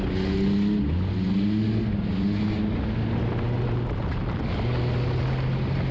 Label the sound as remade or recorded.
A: recorded